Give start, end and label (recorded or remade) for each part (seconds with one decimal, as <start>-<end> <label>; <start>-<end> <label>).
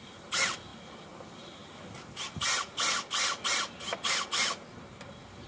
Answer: 0.0-5.5 recorded